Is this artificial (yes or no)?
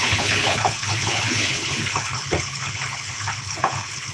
yes